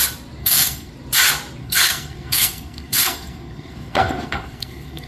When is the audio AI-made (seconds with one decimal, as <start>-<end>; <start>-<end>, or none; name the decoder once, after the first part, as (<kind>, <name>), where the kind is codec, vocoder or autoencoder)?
0.4-0.9 (codec, SNAC); 1.6-5.1